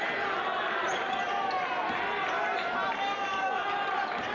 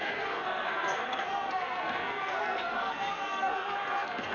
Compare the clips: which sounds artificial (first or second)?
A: second